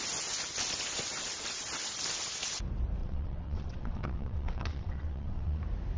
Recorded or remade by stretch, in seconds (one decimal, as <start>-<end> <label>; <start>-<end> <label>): 0.0-3.0 recorded; 3.0-5.6 remade; 5.6-6.0 recorded